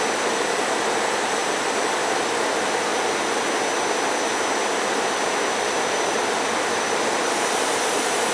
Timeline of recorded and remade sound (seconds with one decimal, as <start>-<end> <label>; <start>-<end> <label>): 0.0-2.9 remade; 2.9-5.9 recorded; 5.9-8.3 remade